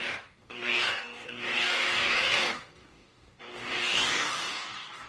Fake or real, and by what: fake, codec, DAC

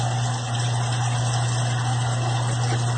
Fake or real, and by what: real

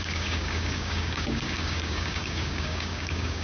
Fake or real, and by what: fake, codec, DAC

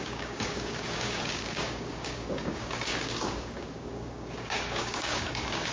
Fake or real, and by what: fake, codec, DAC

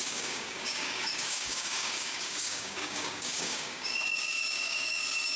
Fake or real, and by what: fake, codec, DAC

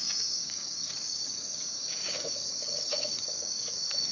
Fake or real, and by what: fake, codec, DAC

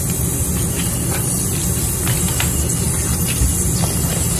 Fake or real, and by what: real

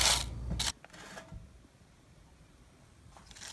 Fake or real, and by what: real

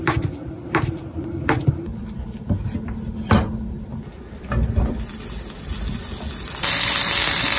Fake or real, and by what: real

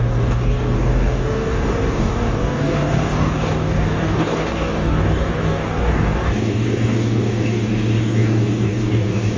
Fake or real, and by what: fake, codec, DAC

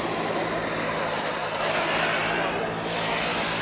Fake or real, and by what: real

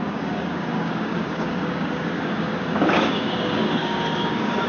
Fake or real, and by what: fake, codec, DAC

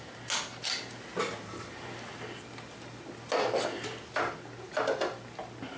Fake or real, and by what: real